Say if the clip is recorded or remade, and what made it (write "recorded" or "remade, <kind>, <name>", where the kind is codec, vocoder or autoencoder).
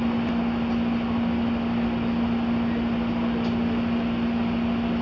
recorded